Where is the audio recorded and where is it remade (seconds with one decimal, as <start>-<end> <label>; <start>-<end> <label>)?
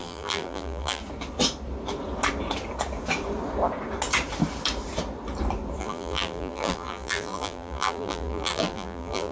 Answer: 0.0-1.0 remade; 1.0-5.8 recorded; 5.8-9.3 remade